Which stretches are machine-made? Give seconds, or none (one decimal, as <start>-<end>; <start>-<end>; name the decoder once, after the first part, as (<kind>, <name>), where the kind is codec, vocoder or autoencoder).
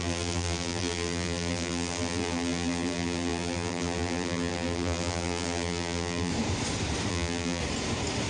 0.0-6.3 (vocoder, BigVGAN v2); 7.1-7.6